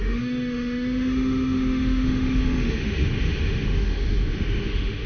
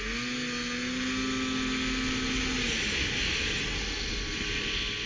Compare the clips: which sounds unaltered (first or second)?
second